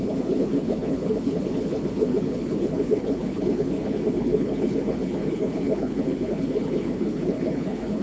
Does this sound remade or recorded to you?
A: remade